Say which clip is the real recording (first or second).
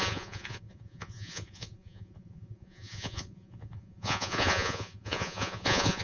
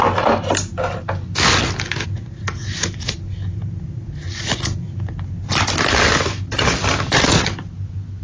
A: second